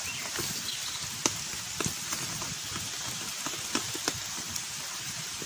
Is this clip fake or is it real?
real